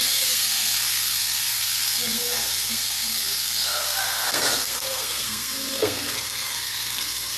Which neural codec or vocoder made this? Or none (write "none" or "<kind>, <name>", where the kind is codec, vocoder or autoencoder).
codec, SNAC